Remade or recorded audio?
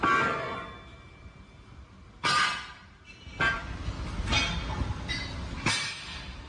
recorded